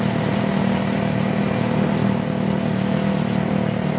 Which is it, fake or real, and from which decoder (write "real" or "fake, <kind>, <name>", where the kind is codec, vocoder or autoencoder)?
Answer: real